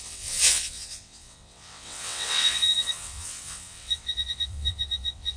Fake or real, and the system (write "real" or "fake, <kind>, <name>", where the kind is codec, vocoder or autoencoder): fake, vocoder, WaveNeXt